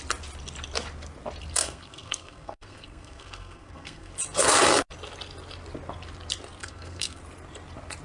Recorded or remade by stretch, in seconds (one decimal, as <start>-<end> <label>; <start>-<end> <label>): 0.0-1.6 recorded; 1.6-4.1 remade; 4.1-6.6 recorded; 6.6-7.2 remade; 7.2-8.0 recorded

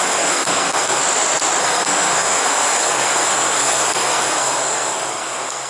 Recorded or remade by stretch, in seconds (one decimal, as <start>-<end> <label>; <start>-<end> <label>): 0.0-1.0 remade; 1.0-1.6 recorded; 1.6-5.7 remade

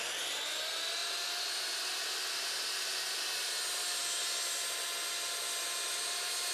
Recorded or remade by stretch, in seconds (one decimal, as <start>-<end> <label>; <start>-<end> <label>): 0.0-6.5 recorded

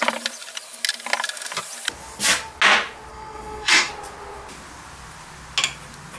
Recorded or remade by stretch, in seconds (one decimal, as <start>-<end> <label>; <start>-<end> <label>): 0.0-3.1 recorded; 3.1-3.9 remade; 3.9-6.2 recorded

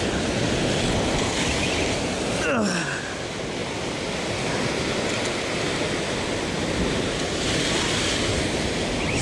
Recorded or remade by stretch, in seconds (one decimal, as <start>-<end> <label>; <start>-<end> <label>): 0.0-9.2 recorded

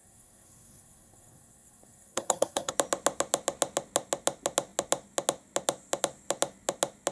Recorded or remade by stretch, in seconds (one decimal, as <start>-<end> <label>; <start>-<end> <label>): 0.0-2.7 remade; 2.7-7.1 recorded

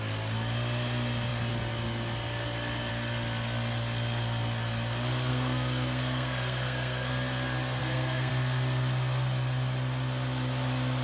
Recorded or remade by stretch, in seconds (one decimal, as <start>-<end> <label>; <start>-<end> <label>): 0.0-5.3 recorded; 5.3-7.1 remade; 7.1-7.8 recorded; 7.8-8.3 remade; 8.3-11.0 recorded